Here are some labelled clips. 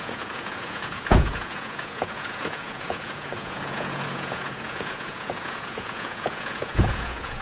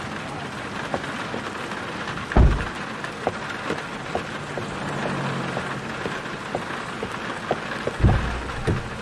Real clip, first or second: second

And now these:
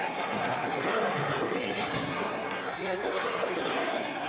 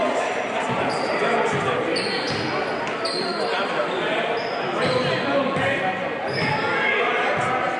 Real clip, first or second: second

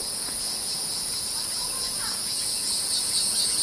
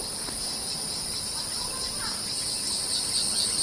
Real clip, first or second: second